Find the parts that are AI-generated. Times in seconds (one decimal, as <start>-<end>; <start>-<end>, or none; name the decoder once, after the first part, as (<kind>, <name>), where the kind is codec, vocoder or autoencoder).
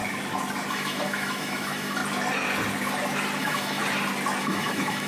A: 0.7-2.0 (autoencoder, DAC-VAE); 3.4-3.8; 4.4-5.1